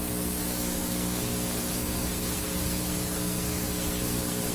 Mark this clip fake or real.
fake